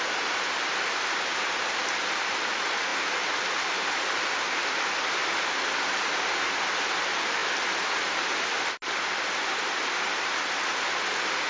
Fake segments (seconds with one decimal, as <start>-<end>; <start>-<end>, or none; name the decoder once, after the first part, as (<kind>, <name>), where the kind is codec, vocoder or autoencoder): none